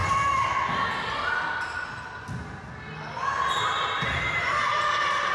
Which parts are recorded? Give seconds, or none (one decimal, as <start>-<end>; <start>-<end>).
0.0-5.3